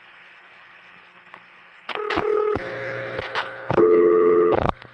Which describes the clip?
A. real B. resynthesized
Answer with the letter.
B